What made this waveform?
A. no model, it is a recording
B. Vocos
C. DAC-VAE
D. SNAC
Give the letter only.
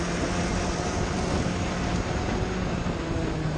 A